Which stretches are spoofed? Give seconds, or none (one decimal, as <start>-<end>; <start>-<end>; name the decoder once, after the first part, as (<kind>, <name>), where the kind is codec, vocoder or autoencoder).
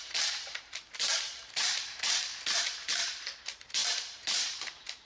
0.0-5.1 (vocoder, BigVGAN v2)